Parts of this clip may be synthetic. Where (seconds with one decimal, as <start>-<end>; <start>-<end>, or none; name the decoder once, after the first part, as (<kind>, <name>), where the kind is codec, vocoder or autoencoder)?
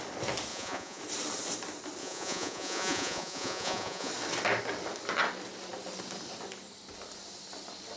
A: 0.5-1.0 (vocoder, Vocos); 2.0-4.1